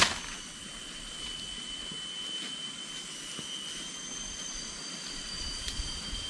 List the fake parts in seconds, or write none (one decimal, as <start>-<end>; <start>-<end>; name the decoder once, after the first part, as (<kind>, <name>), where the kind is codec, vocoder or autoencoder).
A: none